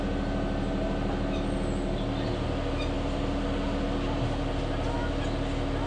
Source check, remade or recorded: recorded